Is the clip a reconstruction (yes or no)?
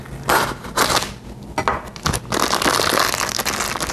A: no